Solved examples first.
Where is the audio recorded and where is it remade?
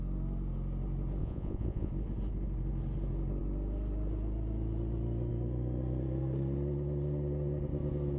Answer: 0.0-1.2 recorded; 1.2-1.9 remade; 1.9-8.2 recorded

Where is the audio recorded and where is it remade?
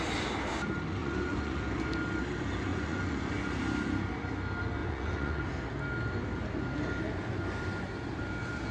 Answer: 0.0-1.0 recorded; 1.0-1.6 remade; 1.6-2.7 recorded; 2.7-3.3 remade; 3.3-4.8 recorded; 4.8-5.4 remade; 5.4-8.7 recorded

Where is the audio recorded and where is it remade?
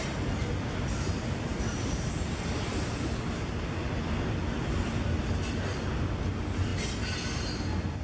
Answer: 0.0-8.0 recorded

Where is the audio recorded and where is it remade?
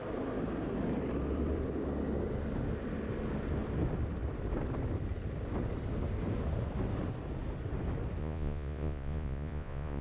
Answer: 0.0-8.2 recorded; 8.2-10.0 remade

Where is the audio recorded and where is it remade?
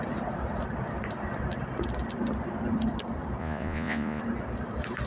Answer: 0.0-3.4 recorded; 3.4-4.2 remade; 4.2-5.1 recorded